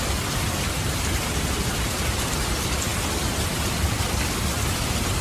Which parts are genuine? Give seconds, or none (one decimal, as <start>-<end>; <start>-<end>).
0.0-5.2